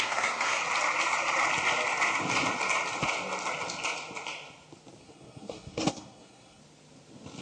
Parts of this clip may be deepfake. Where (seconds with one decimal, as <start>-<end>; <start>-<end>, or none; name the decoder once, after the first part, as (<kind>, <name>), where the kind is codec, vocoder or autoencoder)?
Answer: 0.0-0.6 (codec, SNAC); 5.0-6.6